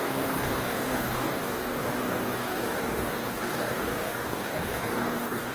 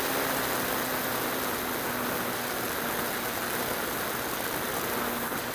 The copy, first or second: first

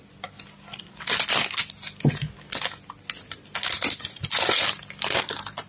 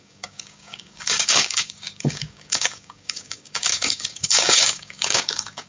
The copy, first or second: second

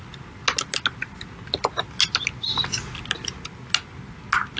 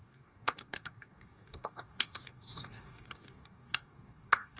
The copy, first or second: second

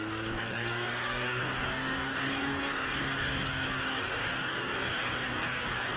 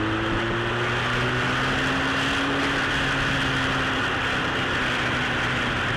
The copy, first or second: first